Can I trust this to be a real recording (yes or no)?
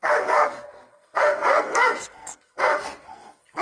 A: no